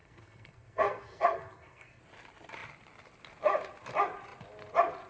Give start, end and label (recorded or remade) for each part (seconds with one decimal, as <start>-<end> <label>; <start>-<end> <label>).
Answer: 0.0-2.0 remade; 2.0-5.1 recorded